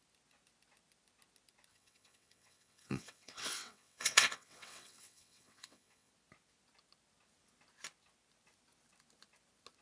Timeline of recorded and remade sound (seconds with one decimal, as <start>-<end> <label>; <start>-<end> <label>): 0.0-1.7 recorded; 1.7-6.1 remade; 6.1-9.8 recorded